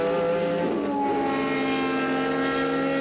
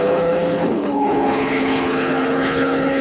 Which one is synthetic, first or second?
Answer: second